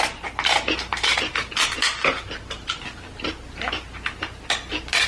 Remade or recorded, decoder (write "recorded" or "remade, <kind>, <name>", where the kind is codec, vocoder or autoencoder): recorded